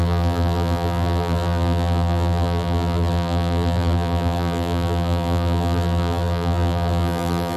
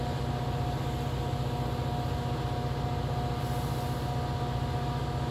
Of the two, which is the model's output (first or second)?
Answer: first